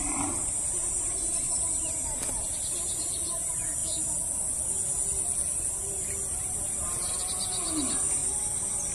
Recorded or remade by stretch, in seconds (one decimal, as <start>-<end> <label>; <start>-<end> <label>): 0.0-3.8 remade; 3.8-6.4 recorded; 6.4-8.2 remade; 8.2-8.9 recorded